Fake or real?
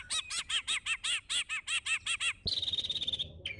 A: real